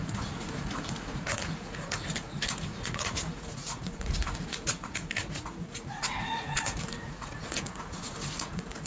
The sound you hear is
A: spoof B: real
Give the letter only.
A